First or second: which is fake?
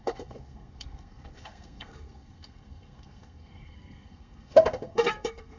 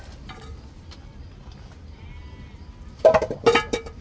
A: first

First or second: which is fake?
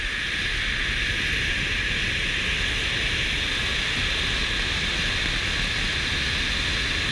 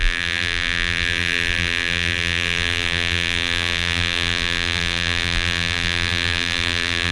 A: second